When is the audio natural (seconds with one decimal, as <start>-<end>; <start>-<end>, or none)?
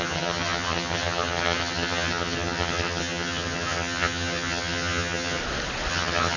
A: 5.4-5.9